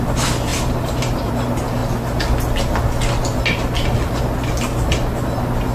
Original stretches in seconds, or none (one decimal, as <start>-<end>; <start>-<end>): 0.0-0.5; 1.3-5.7